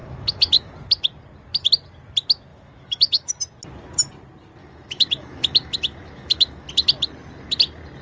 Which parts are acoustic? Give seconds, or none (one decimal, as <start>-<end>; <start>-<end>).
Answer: 0.7-2.5; 3.3-4.6; 6.7-8.0